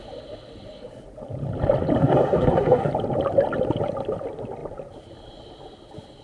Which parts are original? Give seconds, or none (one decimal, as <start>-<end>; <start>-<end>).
0.0-2.0; 2.9-6.2